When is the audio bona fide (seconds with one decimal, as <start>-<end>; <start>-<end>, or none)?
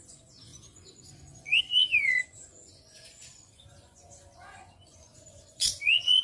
none